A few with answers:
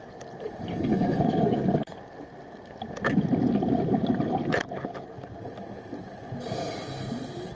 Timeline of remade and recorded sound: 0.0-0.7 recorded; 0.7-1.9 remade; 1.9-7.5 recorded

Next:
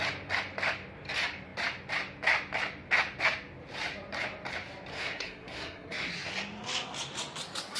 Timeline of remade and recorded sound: 0.0-4.9 recorded; 4.9-6.1 remade; 6.1-7.8 recorded

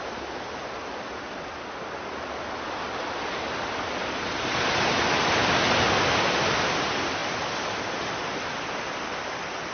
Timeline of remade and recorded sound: 0.0-9.7 recorded

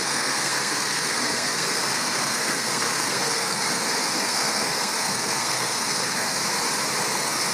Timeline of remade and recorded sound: 0.0-6.4 remade; 6.4-7.0 recorded; 7.0-7.5 remade

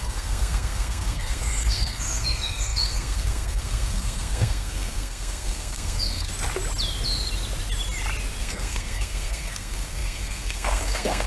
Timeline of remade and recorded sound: 0.0-6.3 remade; 6.3-8.4 recorded; 8.4-11.3 remade

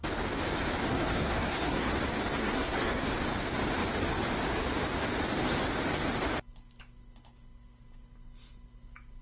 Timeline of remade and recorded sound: 0.0-0.9 recorded; 0.9-1.9 remade; 1.9-2.4 recorded; 2.4-3.0 remade; 3.0-9.2 recorded

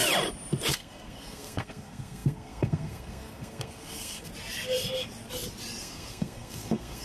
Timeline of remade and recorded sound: 0.0-0.7 recorded; 0.7-4.3 remade; 4.3-5.8 recorded; 5.8-7.0 remade